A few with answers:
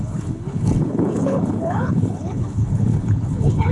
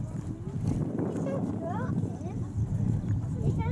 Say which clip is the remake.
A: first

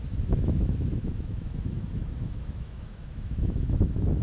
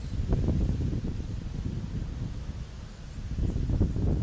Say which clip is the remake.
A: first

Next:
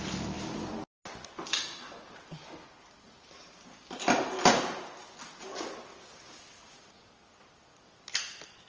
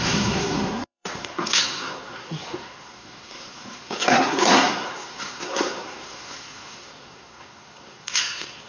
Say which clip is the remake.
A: second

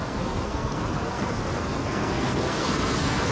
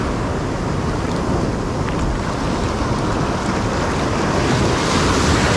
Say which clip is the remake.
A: first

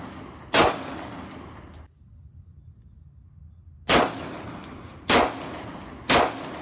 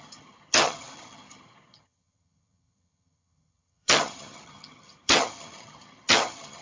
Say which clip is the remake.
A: second